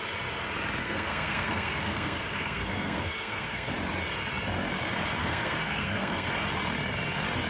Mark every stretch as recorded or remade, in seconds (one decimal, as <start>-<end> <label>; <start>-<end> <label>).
0.0-0.8 recorded; 0.8-3.7 remade; 3.7-5.2 recorded; 5.2-6.3 remade; 6.3-7.5 recorded